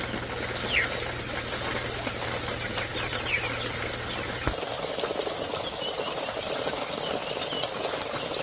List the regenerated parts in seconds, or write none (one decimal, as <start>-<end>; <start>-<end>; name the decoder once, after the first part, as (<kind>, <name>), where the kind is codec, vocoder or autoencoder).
none